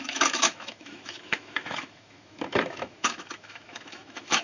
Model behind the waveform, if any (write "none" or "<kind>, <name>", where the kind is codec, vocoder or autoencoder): autoencoder, DAC-VAE